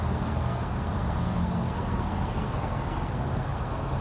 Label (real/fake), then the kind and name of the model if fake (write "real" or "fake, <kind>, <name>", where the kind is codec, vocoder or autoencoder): fake, codec, SNAC